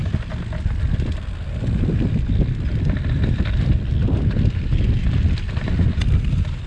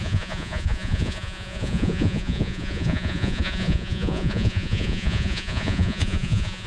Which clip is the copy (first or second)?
second